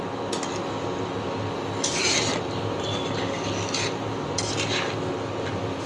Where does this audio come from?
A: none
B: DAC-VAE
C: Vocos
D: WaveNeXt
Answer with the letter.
A